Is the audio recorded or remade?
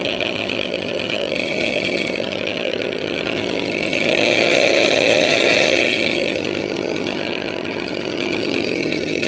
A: remade